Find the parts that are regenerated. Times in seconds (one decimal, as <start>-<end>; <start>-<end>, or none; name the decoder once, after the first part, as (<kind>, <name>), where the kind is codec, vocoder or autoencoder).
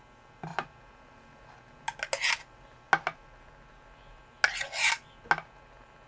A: none